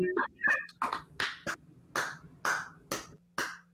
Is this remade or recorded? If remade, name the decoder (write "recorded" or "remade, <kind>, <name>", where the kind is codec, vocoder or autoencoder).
recorded